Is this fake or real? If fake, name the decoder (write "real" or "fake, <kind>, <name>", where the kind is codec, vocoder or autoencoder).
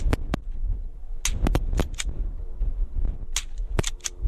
real